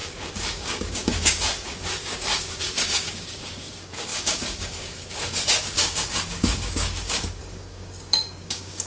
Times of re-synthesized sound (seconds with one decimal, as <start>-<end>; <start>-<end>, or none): 0.0-8.9